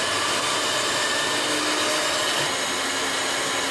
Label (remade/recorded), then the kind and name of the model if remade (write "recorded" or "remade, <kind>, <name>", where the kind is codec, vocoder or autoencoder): recorded